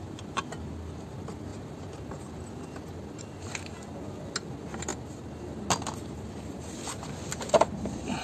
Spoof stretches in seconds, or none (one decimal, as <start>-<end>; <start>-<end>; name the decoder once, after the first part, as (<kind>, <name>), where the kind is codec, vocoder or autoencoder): none